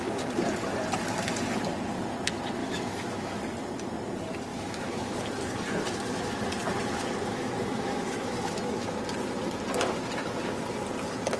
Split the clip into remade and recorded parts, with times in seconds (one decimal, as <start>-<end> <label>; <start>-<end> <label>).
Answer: 0.0-2.6 recorded; 2.6-3.4 remade; 3.4-4.5 recorded; 4.5-5.2 remade; 5.2-7.3 recorded; 7.3-9.0 remade; 9.0-11.4 recorded